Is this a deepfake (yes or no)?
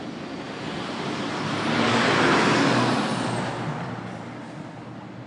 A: no